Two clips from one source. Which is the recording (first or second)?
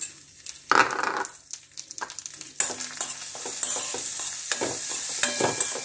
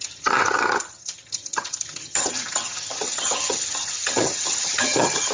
first